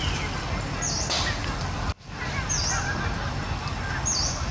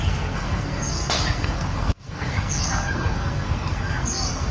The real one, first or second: first